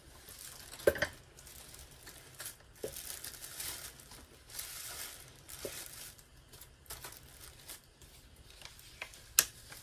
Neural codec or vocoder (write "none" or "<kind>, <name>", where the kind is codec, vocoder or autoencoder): none